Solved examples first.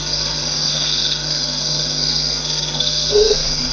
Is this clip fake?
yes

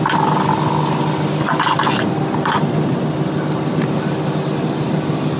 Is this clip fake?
no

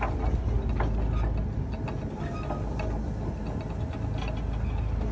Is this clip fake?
no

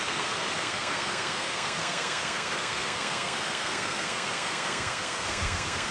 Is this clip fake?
yes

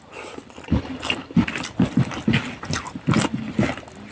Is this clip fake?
no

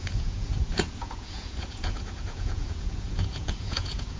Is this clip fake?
yes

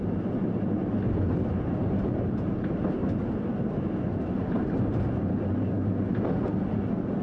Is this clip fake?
no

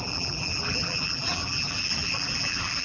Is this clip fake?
yes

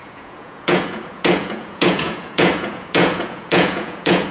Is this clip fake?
yes